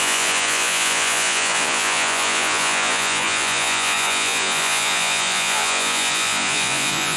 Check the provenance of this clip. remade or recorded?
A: remade